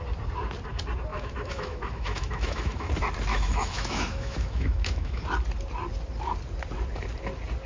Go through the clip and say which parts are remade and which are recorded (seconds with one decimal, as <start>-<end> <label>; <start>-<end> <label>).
0.0-1.1 recorded; 1.1-2.9 remade; 2.9-3.3 recorded; 3.3-5.2 remade; 5.2-7.7 recorded